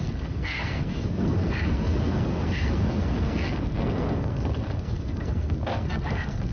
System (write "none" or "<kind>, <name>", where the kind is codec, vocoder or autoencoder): codec, SNAC